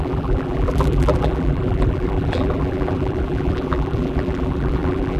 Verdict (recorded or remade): remade